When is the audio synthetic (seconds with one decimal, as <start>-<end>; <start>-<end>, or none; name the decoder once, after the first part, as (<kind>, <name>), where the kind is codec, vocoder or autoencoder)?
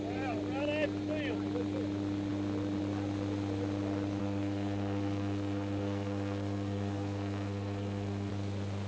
4.2-8.3 (codec, SNAC)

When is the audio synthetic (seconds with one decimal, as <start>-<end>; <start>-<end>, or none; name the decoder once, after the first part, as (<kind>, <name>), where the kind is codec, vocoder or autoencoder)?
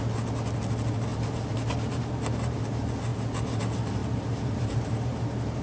1.1-2.6 (vocoder, BigVGAN v2); 4.0-5.6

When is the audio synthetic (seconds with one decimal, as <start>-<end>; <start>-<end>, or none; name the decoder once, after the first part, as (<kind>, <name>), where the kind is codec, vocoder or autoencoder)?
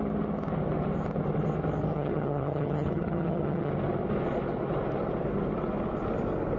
1.9-3.7 (vocoder, HiFi-GAN)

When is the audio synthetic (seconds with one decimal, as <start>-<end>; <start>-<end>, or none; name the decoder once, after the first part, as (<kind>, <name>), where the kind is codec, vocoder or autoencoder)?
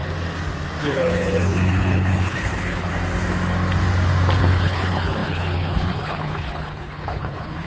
0.8-2.9 (codec, HILCodec); 4.4-7.7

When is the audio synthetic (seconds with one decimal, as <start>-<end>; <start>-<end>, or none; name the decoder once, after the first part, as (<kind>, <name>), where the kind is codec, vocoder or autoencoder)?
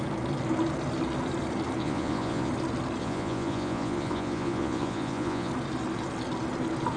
1.8-2.5 (vocoder, Vocos); 3.0-5.5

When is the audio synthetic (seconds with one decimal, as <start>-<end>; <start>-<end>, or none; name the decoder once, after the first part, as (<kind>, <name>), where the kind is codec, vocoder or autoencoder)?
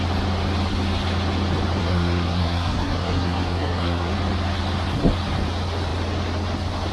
1.8-4.1 (codec, SNAC)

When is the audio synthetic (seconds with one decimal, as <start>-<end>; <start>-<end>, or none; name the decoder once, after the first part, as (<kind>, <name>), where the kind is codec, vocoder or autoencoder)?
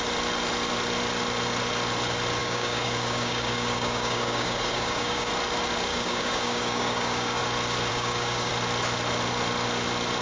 2.4-5.3 (codec, DAC); 5.9-7.4; 7.9-8.5